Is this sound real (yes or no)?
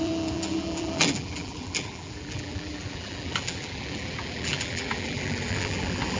no